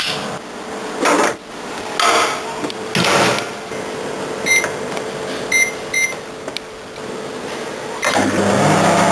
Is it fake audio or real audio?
real